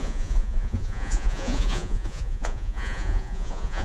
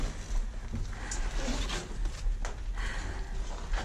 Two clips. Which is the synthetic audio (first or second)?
first